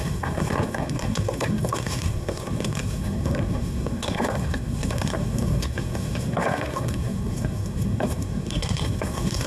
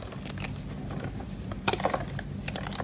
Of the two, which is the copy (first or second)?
first